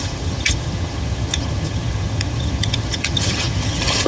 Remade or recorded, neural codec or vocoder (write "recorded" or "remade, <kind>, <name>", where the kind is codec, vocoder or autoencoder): remade, vocoder, HiFi-GAN